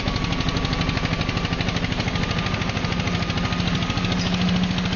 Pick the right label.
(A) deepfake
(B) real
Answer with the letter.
B